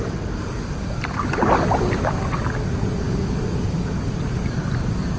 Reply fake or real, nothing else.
real